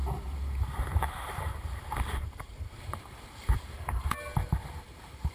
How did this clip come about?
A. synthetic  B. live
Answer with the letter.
A